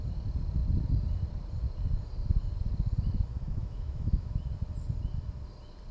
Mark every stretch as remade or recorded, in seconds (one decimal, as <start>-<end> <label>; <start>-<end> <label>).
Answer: 0.0-3.5 recorded; 3.5-4.4 remade; 4.4-5.9 recorded